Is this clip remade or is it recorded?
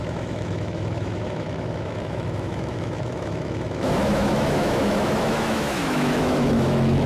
remade